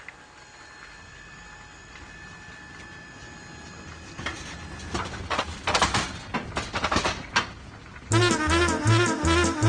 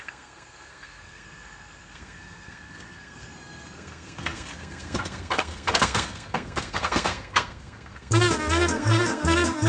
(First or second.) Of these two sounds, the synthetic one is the second